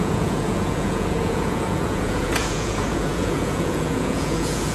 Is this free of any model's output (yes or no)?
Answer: no